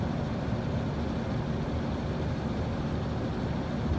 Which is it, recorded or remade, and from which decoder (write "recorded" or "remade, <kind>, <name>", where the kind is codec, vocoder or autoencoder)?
recorded